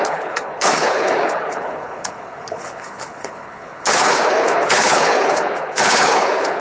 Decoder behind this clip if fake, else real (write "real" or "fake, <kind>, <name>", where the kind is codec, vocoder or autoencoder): fake, codec, HILCodec